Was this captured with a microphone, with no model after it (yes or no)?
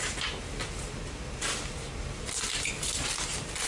yes